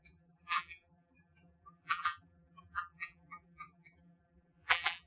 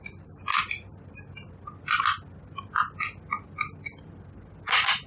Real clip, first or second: second